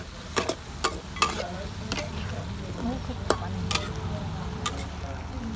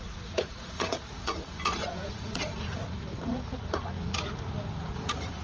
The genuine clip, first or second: first